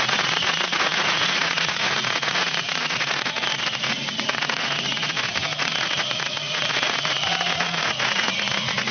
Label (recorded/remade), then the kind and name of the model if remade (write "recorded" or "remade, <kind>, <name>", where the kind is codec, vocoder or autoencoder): remade, vocoder, Vocos